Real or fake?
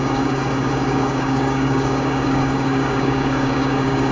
fake